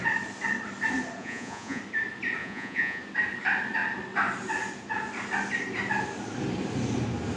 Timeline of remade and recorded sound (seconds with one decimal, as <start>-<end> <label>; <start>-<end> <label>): 0.0-1.2 recorded; 1.2-1.8 remade; 1.8-2.4 recorded; 2.4-3.0 remade; 3.0-7.4 recorded